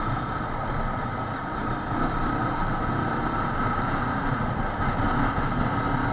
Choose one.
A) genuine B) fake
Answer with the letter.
A